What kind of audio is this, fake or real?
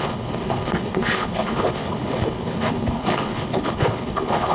fake